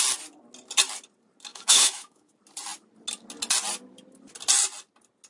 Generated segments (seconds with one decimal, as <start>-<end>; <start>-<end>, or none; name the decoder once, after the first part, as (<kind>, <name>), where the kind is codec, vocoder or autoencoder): 1.5-2.3 (autoencoder, DAC-VAE)